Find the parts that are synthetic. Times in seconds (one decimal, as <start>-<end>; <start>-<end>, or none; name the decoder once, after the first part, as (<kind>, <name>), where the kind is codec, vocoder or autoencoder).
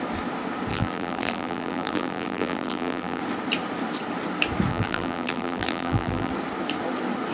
0.7-3.2 (vocoder, BigVGAN v2); 4.7-6.3